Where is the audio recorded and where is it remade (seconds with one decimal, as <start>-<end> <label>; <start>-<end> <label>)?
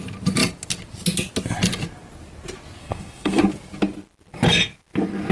0.0-2.8 recorded; 2.8-3.4 remade; 3.4-5.3 recorded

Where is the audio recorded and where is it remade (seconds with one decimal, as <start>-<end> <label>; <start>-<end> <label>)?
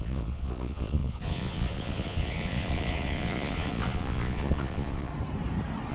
0.0-5.1 remade; 5.1-5.9 recorded